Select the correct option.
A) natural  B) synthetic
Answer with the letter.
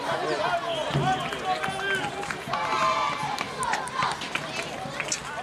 A